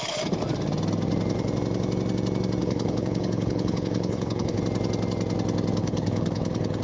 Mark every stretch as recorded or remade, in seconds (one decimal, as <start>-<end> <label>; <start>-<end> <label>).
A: 0.0-2.6 recorded; 2.6-4.6 remade; 4.6-5.8 recorded; 5.8-6.8 remade